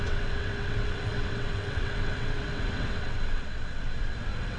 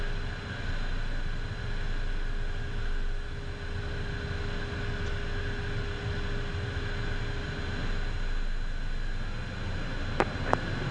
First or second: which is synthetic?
first